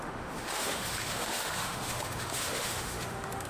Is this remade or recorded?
remade